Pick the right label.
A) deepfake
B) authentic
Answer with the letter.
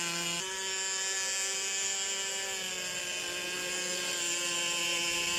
B